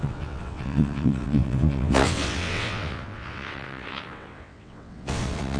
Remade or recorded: remade